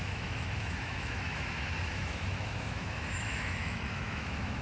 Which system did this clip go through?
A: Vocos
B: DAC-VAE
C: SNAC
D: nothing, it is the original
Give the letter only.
B